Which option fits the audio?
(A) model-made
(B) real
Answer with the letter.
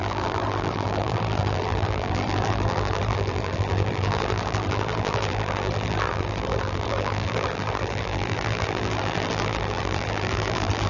A